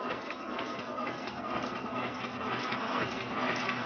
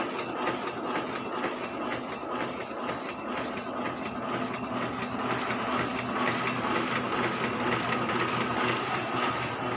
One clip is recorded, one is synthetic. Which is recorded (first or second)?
second